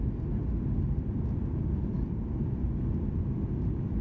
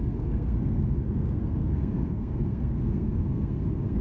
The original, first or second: first